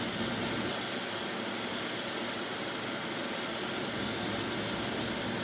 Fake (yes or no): no